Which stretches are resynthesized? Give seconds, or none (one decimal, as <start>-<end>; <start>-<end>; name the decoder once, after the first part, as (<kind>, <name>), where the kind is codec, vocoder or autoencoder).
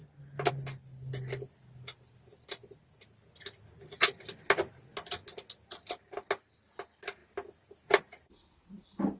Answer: none